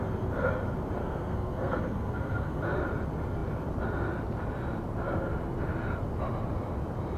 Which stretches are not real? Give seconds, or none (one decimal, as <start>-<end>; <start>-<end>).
1.0-2.6